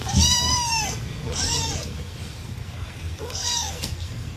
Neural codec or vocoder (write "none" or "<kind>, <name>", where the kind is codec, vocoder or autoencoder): codec, SNAC